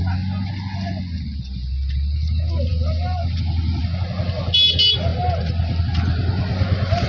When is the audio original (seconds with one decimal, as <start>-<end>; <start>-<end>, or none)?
0.0-7.1

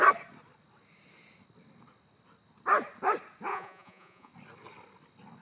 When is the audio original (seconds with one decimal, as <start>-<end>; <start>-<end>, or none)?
0.0-3.5; 4.3-5.4